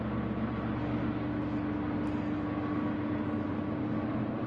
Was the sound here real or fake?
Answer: real